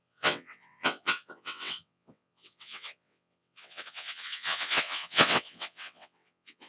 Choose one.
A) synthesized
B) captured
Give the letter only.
A